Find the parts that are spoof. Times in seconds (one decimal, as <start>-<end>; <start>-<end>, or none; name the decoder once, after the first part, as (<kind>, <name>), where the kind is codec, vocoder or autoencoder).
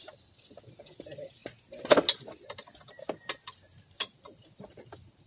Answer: none